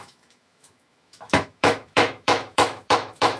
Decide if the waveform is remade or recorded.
remade